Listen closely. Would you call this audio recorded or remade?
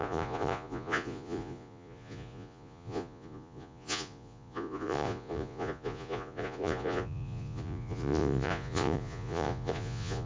remade